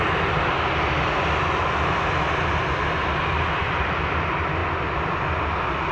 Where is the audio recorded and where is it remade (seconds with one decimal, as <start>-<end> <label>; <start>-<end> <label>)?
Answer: 0.0-5.9 recorded